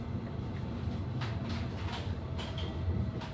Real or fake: real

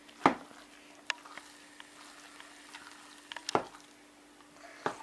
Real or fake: real